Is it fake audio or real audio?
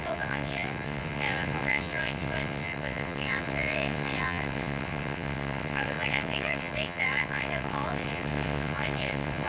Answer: fake